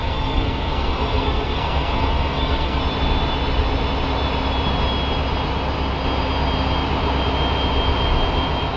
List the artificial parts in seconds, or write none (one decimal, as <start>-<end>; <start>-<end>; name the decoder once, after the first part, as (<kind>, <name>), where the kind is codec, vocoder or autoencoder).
0.0-2.8 (codec, SNAC)